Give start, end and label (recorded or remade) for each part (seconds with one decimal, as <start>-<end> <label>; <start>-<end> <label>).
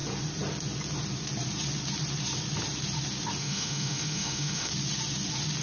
0.0-3.4 recorded; 3.4-4.7 remade; 4.7-5.6 recorded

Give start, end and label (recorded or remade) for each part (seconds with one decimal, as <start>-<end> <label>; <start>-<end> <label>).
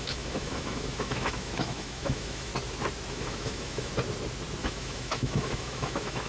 0.0-2.5 remade; 2.5-3.1 recorded; 3.1-3.9 remade; 3.9-4.6 recorded; 4.6-6.3 remade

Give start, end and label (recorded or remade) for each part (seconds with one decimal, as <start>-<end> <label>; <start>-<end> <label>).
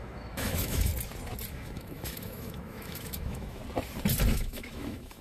0.0-0.9 remade; 0.9-1.5 recorded; 1.5-3.6 remade; 3.6-4.3 recorded; 4.3-5.2 remade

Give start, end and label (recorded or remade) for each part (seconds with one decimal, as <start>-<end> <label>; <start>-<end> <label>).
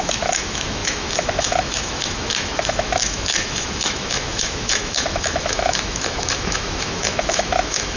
0.0-8.0 remade